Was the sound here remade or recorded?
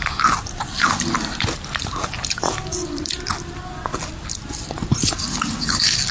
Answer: recorded